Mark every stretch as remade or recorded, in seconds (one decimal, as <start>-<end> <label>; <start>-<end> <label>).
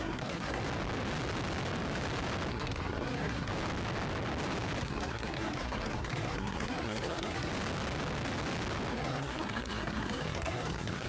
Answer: 0.0-0.6 remade; 0.6-2.5 recorded; 2.5-3.5 remade; 3.5-4.8 recorded; 4.8-7.5 remade; 7.5-8.9 recorded; 8.9-11.1 remade